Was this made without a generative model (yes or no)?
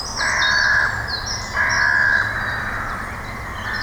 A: no